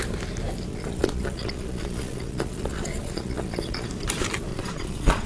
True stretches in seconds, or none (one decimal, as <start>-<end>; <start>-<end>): 0.0-0.7; 3.9-4.5